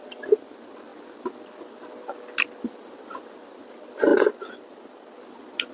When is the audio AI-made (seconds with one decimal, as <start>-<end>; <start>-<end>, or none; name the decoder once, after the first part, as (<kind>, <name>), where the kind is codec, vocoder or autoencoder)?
none